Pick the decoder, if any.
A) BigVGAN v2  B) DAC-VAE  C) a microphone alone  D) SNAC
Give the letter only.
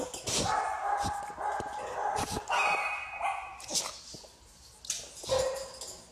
C